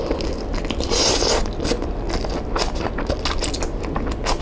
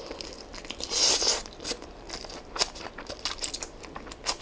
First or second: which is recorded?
first